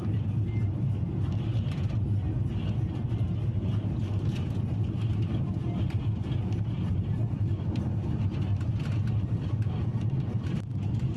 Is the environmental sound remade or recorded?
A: recorded